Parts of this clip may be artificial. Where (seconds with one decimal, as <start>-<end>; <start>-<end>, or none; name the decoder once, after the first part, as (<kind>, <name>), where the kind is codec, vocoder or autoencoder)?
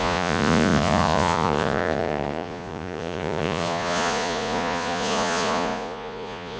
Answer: 0.0-6.6 (vocoder, Vocos)